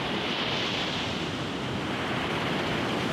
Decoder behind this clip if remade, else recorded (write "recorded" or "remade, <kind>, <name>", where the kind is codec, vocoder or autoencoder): recorded